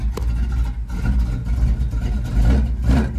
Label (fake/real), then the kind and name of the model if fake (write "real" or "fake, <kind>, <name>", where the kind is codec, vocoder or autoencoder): real